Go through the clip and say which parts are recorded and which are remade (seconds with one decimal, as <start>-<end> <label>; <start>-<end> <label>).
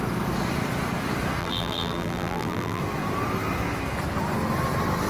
0.0-1.4 recorded; 1.4-2.8 remade; 2.8-5.1 recorded